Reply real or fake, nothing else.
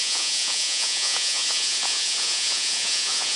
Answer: fake